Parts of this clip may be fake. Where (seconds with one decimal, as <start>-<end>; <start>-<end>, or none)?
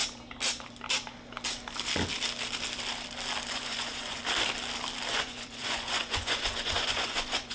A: 3.5-4.2; 5.1-7.5